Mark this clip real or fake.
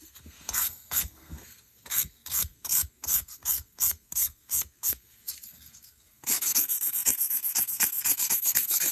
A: fake